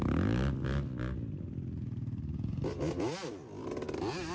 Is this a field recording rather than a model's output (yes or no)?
yes